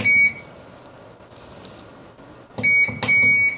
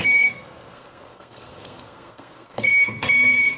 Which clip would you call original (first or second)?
first